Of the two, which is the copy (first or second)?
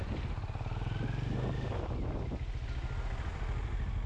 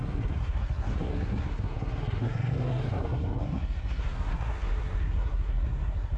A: second